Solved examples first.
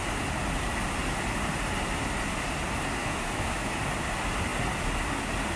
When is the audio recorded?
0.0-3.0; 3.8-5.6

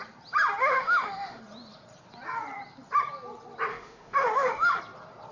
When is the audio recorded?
0.0-0.6; 1.4-3.7; 4.8-5.3

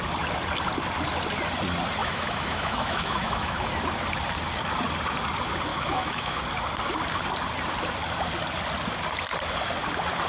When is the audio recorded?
0.0-2.0; 3.7-5.7; 6.4-10.3